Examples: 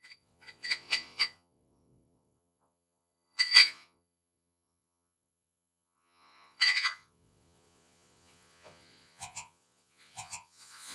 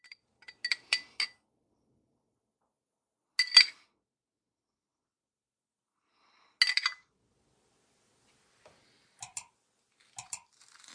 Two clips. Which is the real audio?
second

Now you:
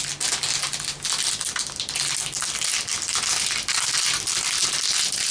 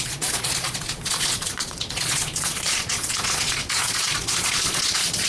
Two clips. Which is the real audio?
first